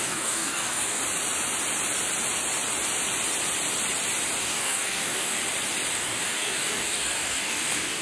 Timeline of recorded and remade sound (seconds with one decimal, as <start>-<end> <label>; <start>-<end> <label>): 0.0-1.0 remade; 1.0-4.4 recorded; 4.4-5.4 remade; 5.4-5.9 recorded; 5.9-8.0 remade